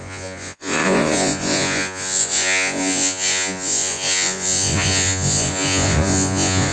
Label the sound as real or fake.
fake